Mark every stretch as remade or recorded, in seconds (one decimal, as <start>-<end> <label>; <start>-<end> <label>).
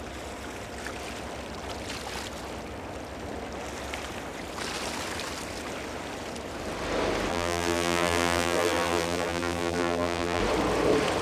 0.0-7.3 recorded; 7.3-10.4 remade; 10.4-11.2 recorded